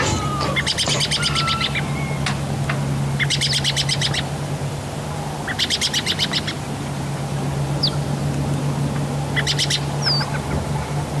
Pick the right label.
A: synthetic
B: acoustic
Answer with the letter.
B